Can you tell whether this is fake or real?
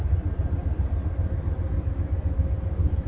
real